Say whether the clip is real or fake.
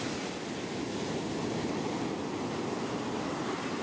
real